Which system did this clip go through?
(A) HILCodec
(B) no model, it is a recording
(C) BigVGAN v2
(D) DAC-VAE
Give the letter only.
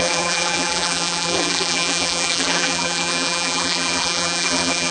C